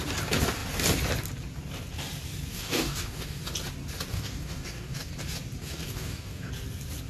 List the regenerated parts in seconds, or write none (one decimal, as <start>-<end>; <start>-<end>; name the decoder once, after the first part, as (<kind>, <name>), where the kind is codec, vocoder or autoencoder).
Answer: 2.5-3.4 (codec, DAC); 4.1-5.1; 5.6-6.5

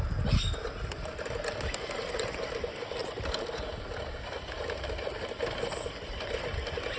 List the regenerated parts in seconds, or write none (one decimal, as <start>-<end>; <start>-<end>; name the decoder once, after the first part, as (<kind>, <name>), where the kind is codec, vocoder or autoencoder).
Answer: none

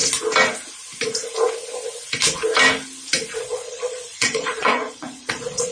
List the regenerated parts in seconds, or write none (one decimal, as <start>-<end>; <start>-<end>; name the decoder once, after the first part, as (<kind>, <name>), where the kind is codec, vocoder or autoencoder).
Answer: 3.4-5.7 (vocoder, Vocos)

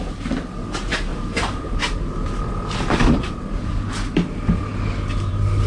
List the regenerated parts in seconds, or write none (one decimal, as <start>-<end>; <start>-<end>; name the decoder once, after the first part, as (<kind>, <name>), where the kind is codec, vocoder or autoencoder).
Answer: 1.1-3.7 (vocoder, BigVGAN v2)